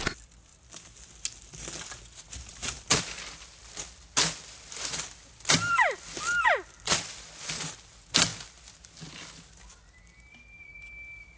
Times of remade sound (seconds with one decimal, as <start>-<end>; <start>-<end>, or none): none